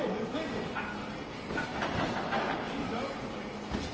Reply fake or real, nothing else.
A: real